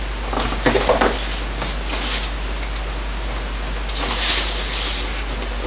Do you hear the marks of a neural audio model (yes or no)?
no